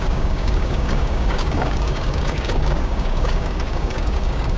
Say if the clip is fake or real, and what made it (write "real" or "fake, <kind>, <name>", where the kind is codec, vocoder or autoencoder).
fake, codec, DAC